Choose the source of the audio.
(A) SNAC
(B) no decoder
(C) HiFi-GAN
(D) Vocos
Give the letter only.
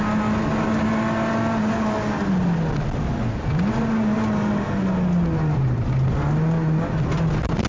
B